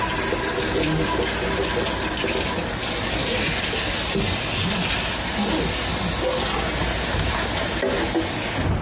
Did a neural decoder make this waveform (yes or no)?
no